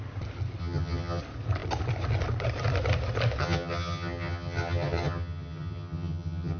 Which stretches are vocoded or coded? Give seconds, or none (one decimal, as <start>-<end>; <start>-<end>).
0.6-1.2; 3.4-6.6